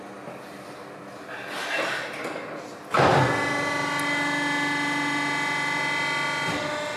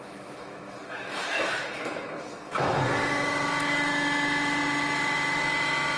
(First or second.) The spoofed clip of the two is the second